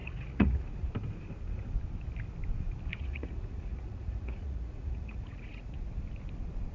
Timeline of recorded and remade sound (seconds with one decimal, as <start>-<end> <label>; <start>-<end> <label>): 0.0-0.9 remade; 0.9-2.9 recorded; 2.9-5.9 remade; 5.9-6.7 recorded